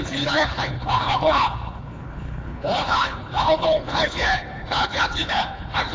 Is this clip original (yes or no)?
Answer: no